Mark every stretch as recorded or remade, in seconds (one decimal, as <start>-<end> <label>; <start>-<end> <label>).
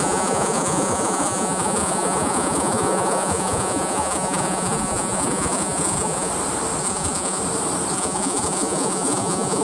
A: 0.0-6.3 remade; 6.3-6.8 recorded; 6.8-7.4 remade; 7.4-7.9 recorded; 7.9-9.6 remade